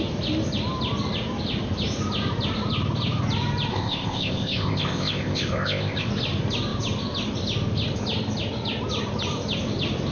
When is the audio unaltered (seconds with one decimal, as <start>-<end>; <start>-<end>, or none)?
0.0-3.7; 6.1-10.1